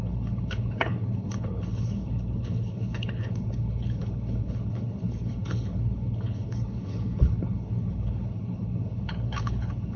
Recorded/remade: remade